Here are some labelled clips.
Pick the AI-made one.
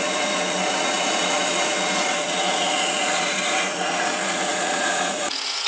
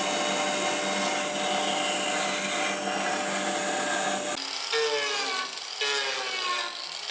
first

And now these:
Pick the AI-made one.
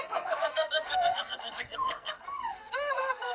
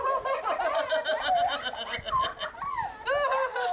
first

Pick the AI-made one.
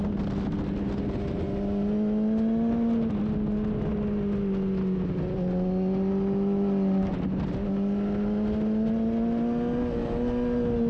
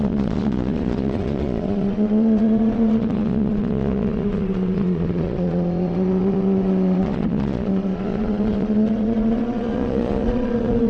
second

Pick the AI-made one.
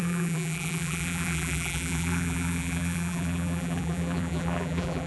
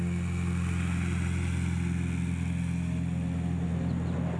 first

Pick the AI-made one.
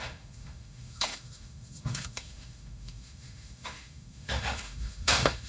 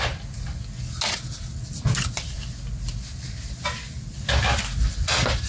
first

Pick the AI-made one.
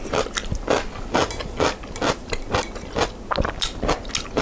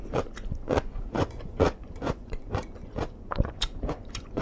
second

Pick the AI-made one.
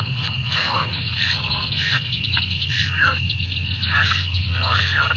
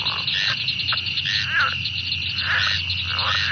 first